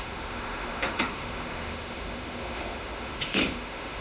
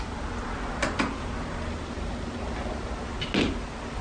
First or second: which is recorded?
second